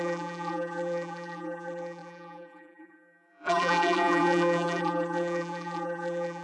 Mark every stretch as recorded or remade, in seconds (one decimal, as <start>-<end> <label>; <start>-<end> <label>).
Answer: 0.0-6.4 remade